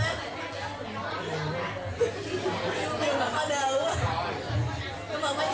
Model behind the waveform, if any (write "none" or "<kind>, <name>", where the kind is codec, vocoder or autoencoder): none